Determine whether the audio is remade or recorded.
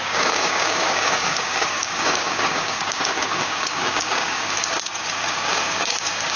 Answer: remade